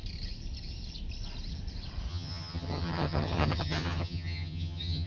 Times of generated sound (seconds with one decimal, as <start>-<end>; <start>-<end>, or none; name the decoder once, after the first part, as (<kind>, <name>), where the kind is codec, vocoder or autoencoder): 2.1-5.1 (vocoder, HiFi-GAN)